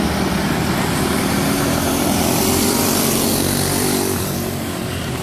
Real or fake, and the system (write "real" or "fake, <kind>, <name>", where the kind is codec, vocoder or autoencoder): fake, vocoder, BigVGAN v2